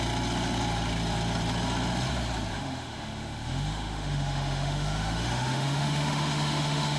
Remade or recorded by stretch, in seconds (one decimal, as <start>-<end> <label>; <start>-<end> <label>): 0.0-2.5 recorded; 2.5-7.0 remade